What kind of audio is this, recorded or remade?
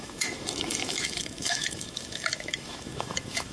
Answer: remade